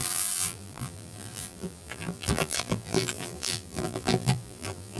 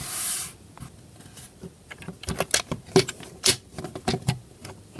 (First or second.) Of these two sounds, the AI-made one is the first